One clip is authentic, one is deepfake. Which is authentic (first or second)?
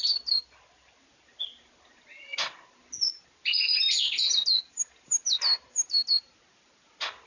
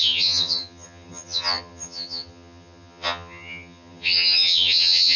first